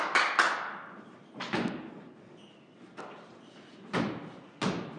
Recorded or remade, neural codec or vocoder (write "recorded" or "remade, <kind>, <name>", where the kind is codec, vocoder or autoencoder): recorded